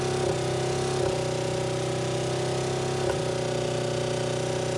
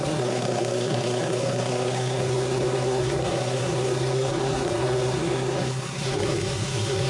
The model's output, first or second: second